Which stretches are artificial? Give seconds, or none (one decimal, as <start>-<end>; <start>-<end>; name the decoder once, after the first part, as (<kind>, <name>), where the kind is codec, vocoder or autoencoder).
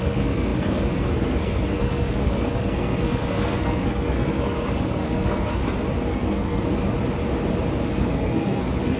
0.0-5.6 (codec, SNAC); 6.1-6.8; 7.9-9.0